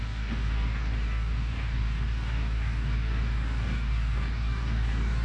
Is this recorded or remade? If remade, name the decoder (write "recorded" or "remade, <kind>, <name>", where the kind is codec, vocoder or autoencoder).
remade, codec, DAC